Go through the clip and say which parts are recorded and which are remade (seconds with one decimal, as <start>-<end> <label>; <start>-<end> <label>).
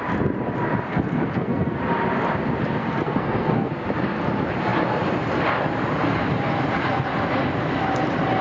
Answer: 0.0-0.9 recorded; 0.9-1.8 remade; 1.8-2.8 recorded; 2.8-3.7 remade; 3.7-8.4 recorded